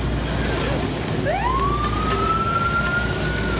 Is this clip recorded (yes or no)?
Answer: yes